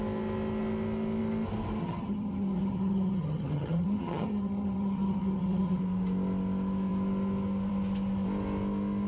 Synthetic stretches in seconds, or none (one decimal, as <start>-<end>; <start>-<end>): 1.8-5.8